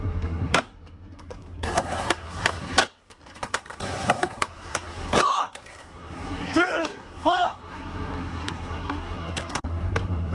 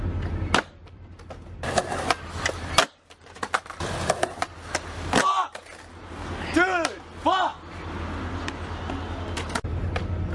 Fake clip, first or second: first